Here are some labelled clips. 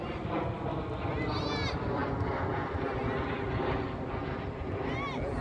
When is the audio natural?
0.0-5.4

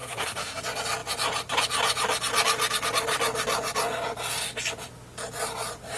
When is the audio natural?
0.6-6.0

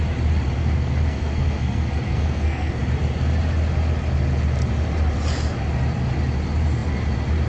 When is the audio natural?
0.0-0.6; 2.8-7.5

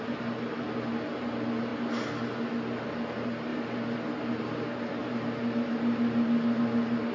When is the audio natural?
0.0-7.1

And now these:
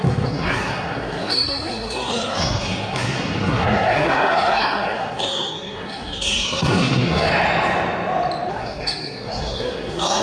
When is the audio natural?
7.3-8.5

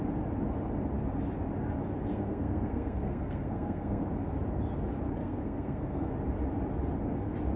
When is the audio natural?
0.0-2.1; 4.0-5.2; 6.1-7.6

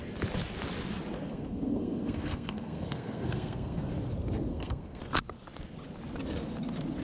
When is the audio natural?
0.0-1.3; 3.9-4.5; 5.0-7.0